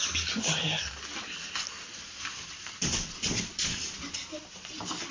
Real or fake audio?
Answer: real